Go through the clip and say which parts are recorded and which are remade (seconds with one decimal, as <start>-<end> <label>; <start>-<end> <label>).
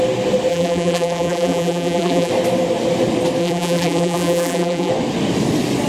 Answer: 0.0-0.5 recorded; 0.5-2.3 remade; 2.3-3.4 recorded; 3.4-4.9 remade; 4.9-5.9 recorded